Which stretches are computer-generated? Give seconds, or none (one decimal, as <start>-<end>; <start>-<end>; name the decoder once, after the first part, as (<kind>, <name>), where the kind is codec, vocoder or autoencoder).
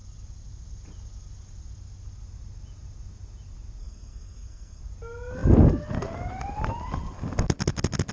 3.8-4.8 (codec, SNAC)